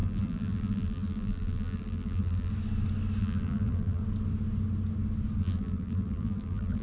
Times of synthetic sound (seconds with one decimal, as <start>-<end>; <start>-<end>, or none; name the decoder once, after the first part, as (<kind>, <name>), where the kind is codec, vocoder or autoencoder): 0.0-2.5 (vocoder, BigVGAN v2); 3.2-4.0; 5.4-6.8